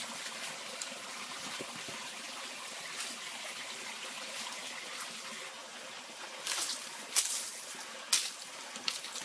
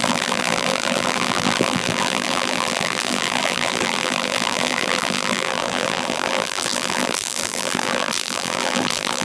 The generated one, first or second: second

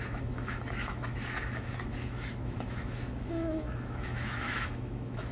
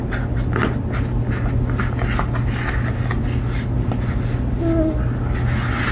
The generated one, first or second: first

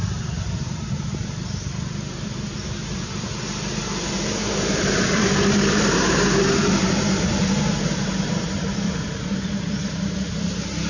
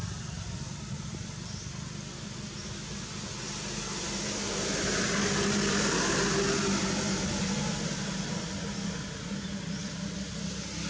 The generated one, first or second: first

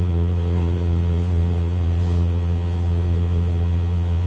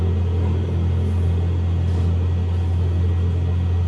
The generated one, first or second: first